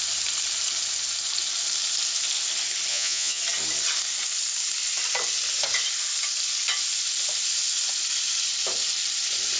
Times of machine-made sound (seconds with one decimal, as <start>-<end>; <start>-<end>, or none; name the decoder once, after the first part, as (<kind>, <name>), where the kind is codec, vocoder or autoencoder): 2.9-3.4 (vocoder, Vocos)